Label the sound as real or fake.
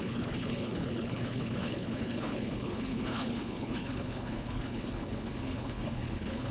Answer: fake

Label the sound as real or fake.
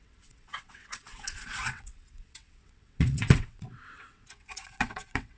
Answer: fake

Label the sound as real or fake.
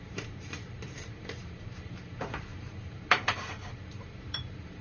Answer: fake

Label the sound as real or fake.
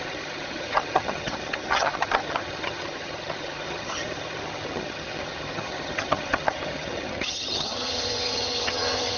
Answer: fake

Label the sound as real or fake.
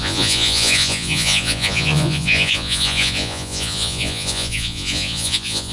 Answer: fake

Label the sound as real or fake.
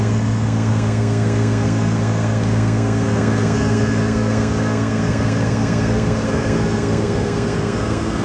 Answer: fake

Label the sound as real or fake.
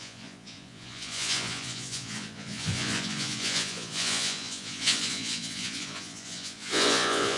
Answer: fake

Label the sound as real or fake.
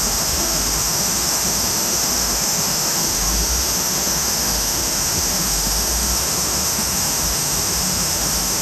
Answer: fake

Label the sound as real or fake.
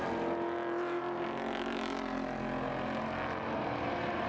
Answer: real